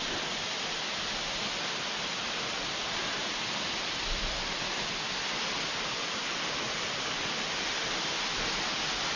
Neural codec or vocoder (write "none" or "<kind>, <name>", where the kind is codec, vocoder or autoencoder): none